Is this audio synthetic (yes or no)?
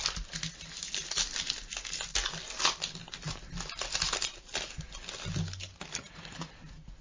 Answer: no